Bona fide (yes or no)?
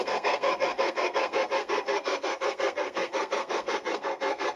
no